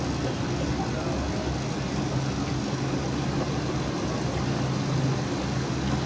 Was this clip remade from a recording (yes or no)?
no